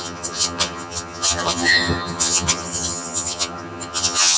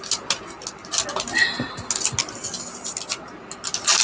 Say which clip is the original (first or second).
second